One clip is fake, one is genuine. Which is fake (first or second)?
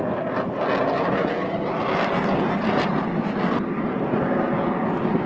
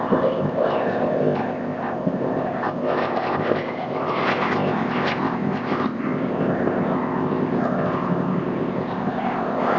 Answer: second